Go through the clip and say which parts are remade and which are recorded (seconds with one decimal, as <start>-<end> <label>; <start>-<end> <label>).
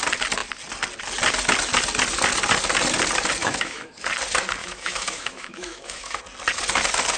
0.0-3.4 recorded; 3.4-3.9 remade; 3.9-4.6 recorded; 4.6-6.2 remade; 6.2-7.2 recorded